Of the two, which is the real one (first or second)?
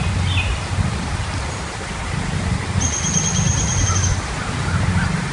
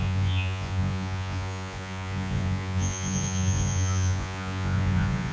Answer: first